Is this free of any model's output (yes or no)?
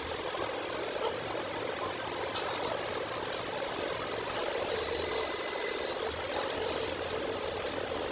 yes